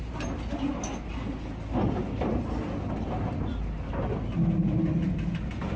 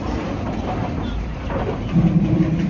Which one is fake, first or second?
second